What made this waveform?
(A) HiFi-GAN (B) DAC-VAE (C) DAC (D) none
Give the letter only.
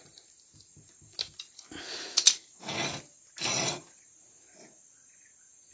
D